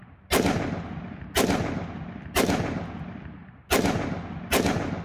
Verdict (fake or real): real